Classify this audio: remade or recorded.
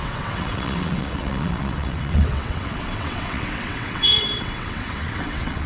remade